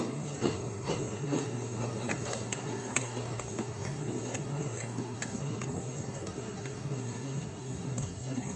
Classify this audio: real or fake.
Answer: fake